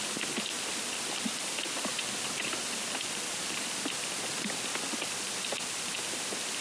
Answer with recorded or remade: recorded